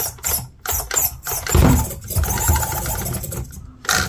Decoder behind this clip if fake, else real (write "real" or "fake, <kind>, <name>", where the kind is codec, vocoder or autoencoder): real